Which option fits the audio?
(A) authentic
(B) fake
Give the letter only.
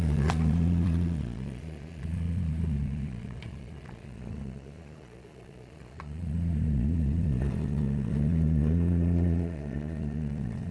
B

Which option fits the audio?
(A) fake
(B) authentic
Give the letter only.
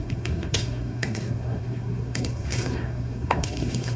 A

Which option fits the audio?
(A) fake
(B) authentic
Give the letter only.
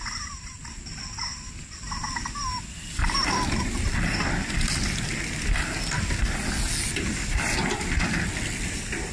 B